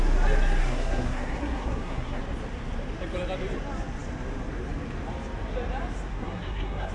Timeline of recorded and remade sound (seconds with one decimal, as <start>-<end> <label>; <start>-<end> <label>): 0.0-0.6 recorded; 0.6-2.2 remade; 2.2-6.1 recorded; 6.1-6.9 remade